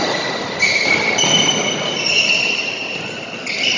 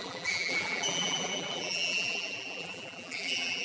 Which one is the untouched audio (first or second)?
first